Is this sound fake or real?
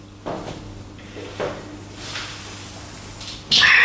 real